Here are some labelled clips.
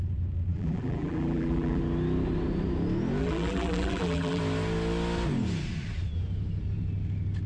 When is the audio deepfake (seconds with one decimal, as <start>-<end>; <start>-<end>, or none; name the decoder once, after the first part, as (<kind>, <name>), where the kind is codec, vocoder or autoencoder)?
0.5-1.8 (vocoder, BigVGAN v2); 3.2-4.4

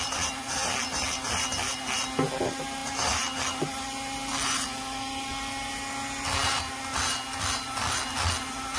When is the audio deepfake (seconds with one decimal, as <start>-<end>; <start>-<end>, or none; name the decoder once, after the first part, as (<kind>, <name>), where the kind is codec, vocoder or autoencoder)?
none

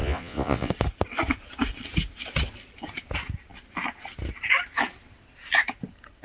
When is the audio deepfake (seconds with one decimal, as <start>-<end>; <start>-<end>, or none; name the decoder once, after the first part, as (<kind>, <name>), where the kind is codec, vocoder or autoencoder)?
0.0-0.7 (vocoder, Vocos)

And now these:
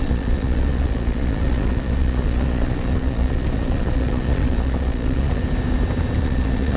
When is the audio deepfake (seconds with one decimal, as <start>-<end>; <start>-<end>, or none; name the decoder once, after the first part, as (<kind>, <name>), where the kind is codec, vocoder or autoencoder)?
0.0-5.4 (vocoder, Vocos); 6.2-6.8

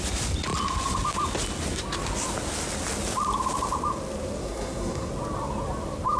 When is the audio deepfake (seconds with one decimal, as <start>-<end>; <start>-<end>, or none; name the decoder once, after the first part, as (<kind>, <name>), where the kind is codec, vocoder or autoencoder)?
4.4-5.1 (codec, SNAC)

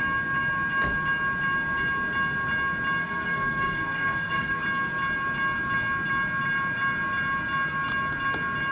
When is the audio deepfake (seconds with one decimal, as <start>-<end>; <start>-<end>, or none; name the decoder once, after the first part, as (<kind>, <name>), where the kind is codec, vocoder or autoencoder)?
3.0-4.6 (codec, SNAC)

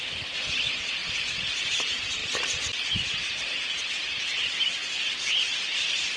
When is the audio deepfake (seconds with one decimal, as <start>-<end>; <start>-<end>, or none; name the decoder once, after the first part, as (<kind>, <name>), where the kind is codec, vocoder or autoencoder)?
none

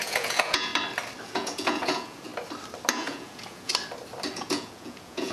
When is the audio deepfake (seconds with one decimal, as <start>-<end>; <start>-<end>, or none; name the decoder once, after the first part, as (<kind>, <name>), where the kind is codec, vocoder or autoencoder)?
0.0-0.7 (vocoder, Vocos); 1.2-2.3; 2.9-3.7; 4.3-5.3